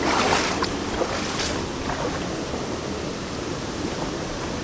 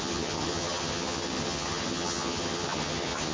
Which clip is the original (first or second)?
first